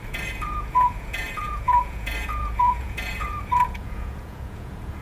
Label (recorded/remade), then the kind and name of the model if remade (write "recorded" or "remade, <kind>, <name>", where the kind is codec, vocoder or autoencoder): remade, vocoder, Vocos